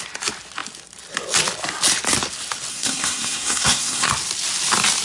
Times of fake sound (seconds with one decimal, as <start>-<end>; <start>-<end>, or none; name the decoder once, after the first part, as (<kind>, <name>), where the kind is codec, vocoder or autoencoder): 2.7-4.1 (codec, SNAC)